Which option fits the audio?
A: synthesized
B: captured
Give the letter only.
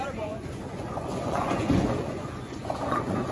A